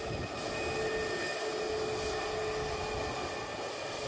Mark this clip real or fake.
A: real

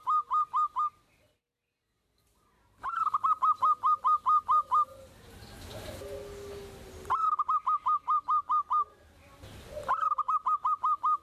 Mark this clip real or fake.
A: real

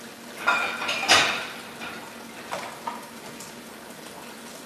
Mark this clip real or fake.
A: real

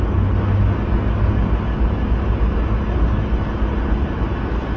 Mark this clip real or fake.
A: real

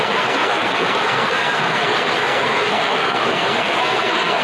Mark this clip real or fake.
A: fake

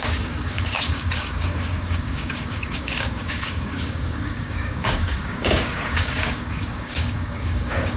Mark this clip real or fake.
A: fake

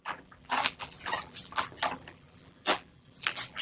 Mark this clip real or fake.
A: fake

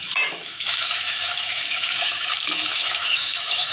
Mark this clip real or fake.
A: fake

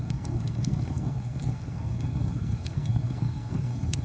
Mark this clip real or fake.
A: fake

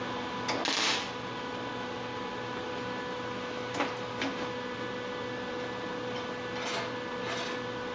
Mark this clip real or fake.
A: real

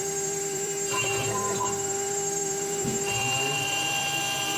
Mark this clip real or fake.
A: fake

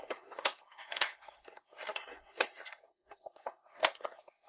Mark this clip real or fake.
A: fake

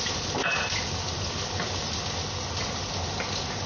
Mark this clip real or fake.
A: real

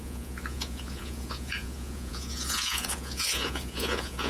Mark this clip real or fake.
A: fake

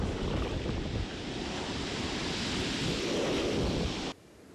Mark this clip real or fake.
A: real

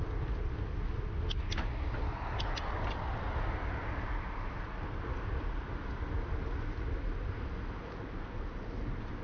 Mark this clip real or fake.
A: real